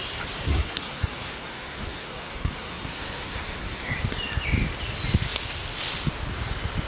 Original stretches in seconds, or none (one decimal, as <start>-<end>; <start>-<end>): 0.0-0.5; 4.0-6.9